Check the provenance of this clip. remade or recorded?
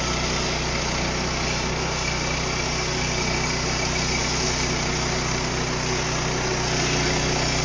recorded